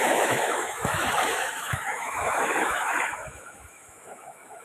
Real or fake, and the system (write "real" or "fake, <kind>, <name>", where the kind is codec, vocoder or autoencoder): fake, autoencoder, DAC-VAE